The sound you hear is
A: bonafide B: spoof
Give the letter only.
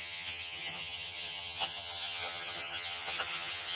B